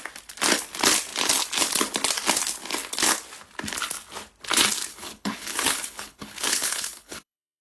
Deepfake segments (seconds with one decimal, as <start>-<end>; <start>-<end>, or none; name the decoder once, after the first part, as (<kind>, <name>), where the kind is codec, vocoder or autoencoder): 4.9-7.6 (codec, HILCodec)